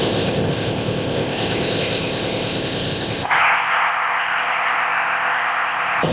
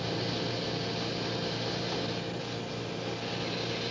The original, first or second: second